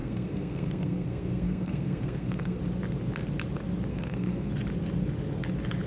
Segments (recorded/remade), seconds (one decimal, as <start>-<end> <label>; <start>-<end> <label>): 0.0-2.6 remade; 2.6-3.9 recorded; 3.9-4.5 remade; 4.5-5.9 recorded